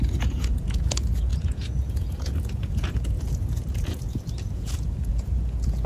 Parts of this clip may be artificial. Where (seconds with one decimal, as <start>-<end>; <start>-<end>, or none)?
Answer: 0.0-5.9